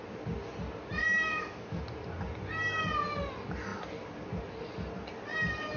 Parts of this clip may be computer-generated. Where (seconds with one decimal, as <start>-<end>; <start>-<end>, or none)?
1.0-1.8